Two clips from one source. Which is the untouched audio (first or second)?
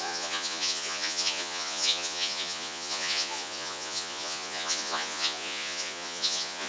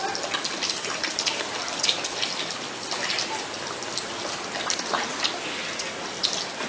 second